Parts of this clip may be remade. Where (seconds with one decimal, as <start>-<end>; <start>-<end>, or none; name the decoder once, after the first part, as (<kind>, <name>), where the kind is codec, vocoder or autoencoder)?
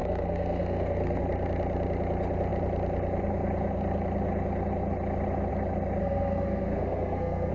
0.0-1.2 (codec, SNAC); 6.0-7.5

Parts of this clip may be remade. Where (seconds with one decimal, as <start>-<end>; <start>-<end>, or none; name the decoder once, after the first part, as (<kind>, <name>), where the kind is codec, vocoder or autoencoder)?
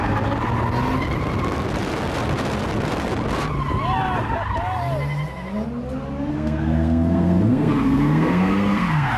6.3-9.2 (codec, SNAC)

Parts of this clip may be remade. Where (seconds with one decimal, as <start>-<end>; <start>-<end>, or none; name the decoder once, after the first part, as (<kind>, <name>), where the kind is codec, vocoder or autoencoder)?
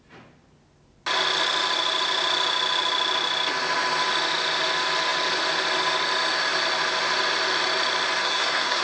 8.2-8.8 (codec, SNAC)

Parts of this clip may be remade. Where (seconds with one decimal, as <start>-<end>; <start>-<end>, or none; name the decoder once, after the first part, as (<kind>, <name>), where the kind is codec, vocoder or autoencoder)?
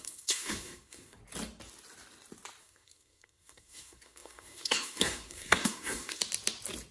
0.0-1.2 (codec, SNAC); 2.6-6.2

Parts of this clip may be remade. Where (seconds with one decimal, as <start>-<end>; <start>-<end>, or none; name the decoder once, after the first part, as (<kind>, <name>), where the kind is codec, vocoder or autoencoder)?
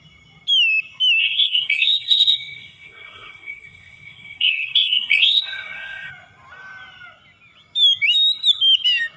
1.2-6.1 (codec, SNAC)